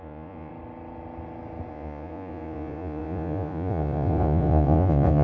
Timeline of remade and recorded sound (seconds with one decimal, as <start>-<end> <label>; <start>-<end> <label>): 0.0-0.5 remade; 0.5-1.7 recorded; 1.7-5.2 remade